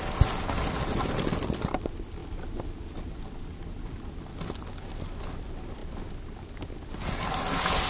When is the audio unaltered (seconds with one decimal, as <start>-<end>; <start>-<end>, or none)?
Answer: 0.0-7.9